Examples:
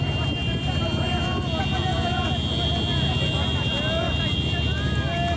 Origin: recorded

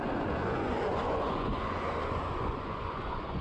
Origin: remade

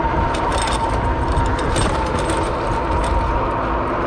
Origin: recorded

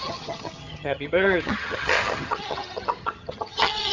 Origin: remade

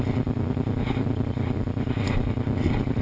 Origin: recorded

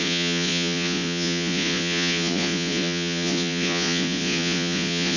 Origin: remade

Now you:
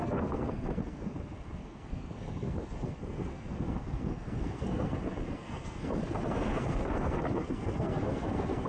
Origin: remade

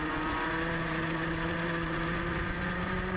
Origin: remade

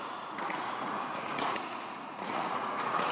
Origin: remade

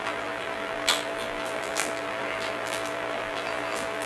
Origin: remade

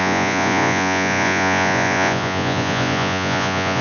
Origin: remade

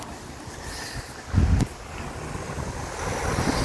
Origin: recorded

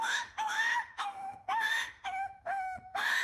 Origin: remade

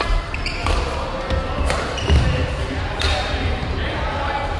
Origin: recorded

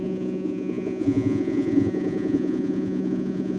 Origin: remade